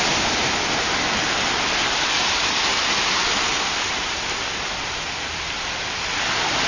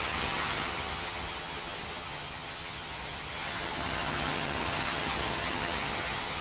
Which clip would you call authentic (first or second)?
first